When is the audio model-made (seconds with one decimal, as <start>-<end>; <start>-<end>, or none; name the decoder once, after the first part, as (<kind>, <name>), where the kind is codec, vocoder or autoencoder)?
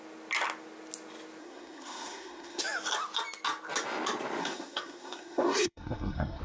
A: 1.4-2.6 (codec, SNAC); 4.4-6.4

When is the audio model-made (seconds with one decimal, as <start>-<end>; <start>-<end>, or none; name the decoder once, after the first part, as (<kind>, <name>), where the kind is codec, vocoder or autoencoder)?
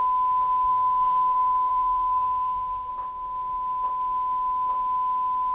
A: 0.7-2.9 (codec, SNAC)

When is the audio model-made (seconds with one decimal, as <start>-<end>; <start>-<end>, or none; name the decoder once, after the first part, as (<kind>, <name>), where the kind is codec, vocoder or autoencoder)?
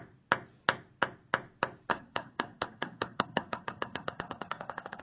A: 1.9-5.0 (codec, SNAC)